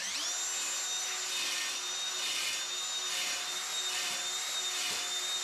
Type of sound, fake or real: real